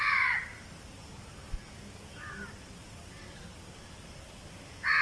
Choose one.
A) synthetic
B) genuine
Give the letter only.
B